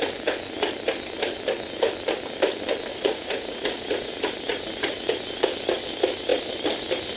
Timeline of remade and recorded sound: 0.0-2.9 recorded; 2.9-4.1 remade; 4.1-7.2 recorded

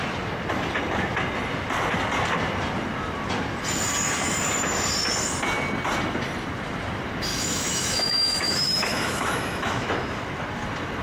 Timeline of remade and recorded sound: 0.0-7.3 recorded; 7.3-9.9 remade; 9.9-11.0 recorded

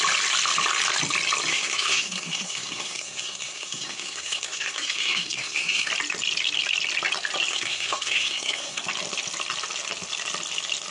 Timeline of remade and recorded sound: 0.0-1.5 recorded; 1.5-5.9 remade; 5.9-7.5 recorded; 7.5-8.8 remade; 8.8-10.9 recorded

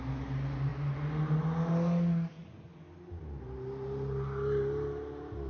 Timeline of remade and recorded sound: 0.0-5.5 recorded

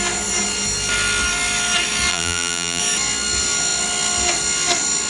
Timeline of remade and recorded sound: 0.0-2.1 recorded; 2.1-2.8 remade; 2.8-5.1 recorded

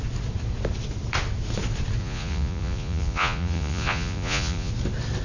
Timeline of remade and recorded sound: 0.0-2.0 recorded; 2.0-4.7 remade; 4.7-5.2 recorded

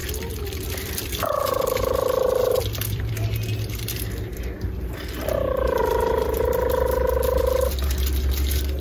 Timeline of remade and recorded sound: 0.0-3.1 remade; 3.1-5.8 recorded; 5.8-6.5 remade; 6.5-8.8 recorded

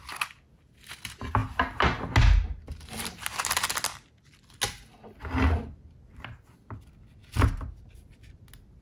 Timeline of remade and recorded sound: 0.0-7.3 recorded; 7.3-8.1 remade; 8.1-8.8 recorded